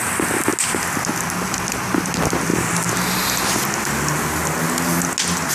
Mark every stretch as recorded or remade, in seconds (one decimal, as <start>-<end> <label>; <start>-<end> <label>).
0.0-5.5 recorded